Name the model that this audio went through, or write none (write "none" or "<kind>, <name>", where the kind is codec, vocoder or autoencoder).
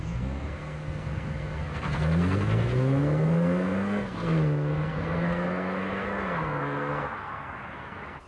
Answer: codec, SNAC